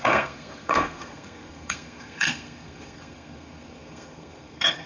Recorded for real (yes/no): no